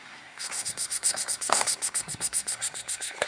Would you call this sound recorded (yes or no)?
no